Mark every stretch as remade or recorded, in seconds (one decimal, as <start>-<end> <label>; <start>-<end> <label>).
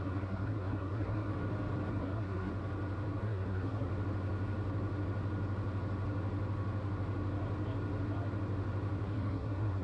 0.0-1.3 remade; 1.3-1.9 recorded; 1.9-2.5 remade; 2.5-3.2 recorded; 3.2-3.9 remade; 3.9-9.0 recorded; 9.0-9.8 remade